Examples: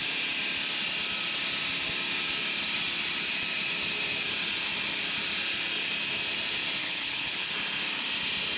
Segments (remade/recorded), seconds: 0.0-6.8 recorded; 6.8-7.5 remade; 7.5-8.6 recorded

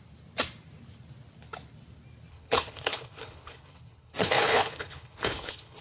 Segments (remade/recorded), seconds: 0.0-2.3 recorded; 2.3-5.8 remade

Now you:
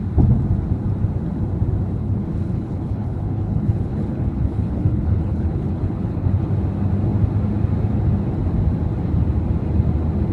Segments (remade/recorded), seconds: 0.0-2.0 recorded; 2.0-6.5 remade; 6.5-10.3 recorded

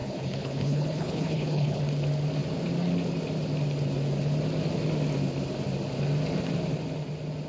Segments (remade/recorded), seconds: 0.0-1.8 remade; 1.8-7.5 recorded

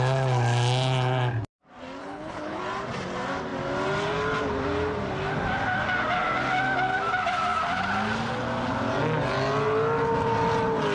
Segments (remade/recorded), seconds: 0.0-2.0 recorded; 2.0-2.6 remade; 2.6-10.9 recorded